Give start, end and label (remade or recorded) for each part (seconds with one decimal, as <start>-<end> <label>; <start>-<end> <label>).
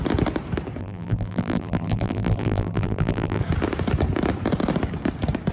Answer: 0.0-0.8 recorded; 0.8-3.4 remade; 3.4-5.5 recorded